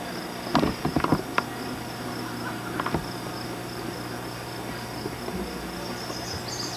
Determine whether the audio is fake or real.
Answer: real